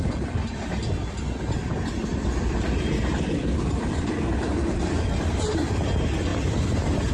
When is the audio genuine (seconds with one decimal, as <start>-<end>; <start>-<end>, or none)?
0.0-2.1; 5.0-6.3